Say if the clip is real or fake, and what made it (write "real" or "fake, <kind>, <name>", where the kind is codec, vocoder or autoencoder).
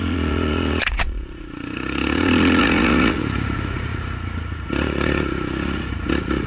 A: fake, vocoder, Vocos